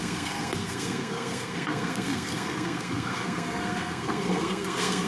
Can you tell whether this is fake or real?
fake